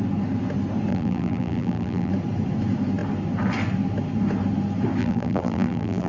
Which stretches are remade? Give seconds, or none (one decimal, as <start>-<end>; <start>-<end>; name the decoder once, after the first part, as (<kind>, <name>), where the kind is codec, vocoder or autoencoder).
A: 0.9-2.1 (vocoder, BigVGAN v2); 5.0-6.1